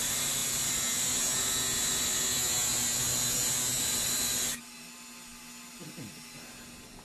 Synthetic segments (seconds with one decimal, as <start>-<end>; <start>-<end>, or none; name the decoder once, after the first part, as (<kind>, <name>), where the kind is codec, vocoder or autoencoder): none